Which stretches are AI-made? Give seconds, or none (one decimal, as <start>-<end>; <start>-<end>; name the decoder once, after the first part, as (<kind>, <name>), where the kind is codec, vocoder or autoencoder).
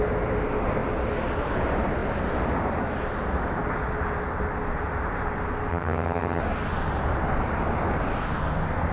5.7-6.4 (vocoder, HiFi-GAN)